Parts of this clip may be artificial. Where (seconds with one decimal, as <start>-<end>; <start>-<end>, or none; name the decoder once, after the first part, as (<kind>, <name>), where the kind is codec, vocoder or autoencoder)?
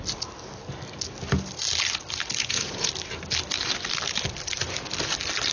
2.4-2.9 (vocoder, Vocos)